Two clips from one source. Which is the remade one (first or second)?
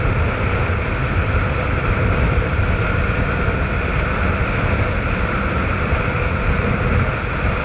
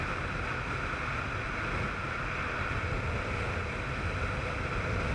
first